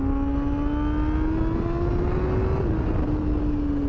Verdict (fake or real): real